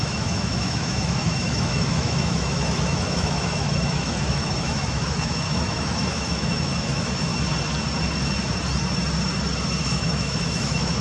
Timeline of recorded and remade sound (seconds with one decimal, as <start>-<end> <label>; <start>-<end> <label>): 0.0-7.3 remade; 7.3-9.8 recorded; 9.8-11.0 remade